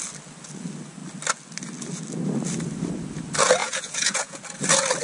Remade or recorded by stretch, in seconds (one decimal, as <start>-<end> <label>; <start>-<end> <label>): 0.0-3.6 recorded; 3.6-4.4 remade; 4.4-5.0 recorded